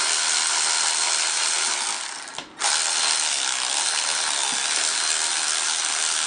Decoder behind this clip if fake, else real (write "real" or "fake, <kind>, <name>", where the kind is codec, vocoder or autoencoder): real